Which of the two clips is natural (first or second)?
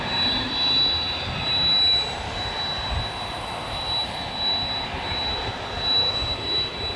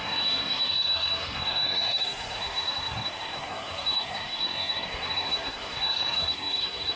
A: first